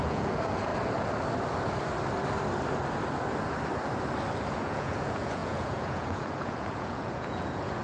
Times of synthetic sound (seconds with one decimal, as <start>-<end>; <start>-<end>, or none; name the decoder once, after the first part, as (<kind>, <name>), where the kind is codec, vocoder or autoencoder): 0.0-0.7 (vocoder, Vocos); 4.5-7.8